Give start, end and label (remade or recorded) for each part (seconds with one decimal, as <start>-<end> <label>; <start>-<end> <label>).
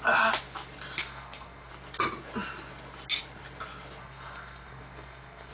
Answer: 0.0-1.0 recorded; 1.0-1.7 remade; 1.7-4.0 recorded; 4.0-5.5 remade